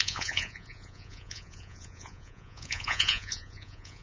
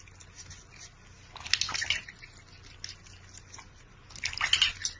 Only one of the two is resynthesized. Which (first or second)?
first